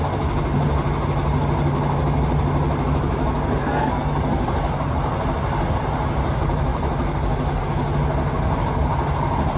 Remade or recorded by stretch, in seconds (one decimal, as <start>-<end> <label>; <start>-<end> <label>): 0.0-3.6 recorded; 3.6-4.1 remade; 4.1-9.6 recorded